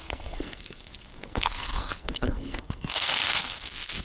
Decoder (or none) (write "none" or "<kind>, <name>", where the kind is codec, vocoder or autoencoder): codec, SNAC